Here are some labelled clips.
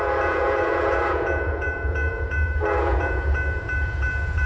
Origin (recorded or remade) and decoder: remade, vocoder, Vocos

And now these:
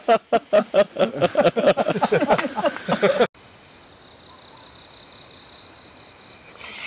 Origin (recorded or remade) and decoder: recorded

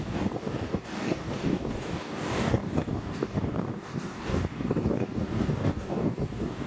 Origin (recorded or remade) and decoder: remade, codec, DAC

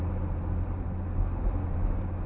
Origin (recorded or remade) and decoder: recorded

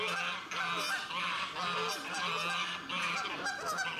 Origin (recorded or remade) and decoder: recorded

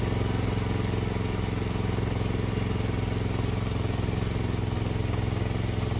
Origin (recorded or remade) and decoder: recorded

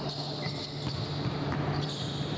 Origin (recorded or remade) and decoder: recorded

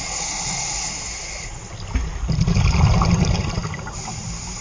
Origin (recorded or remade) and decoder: recorded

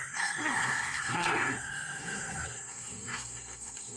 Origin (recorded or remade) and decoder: remade, codec, SNAC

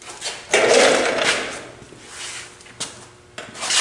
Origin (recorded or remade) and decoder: recorded